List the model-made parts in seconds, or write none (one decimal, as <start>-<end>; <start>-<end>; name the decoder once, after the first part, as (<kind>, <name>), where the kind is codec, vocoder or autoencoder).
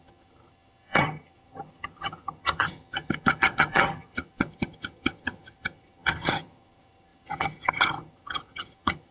0.0-9.1 (vocoder, HiFi-GAN)